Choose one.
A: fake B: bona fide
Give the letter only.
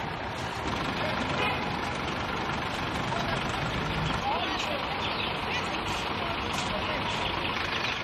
A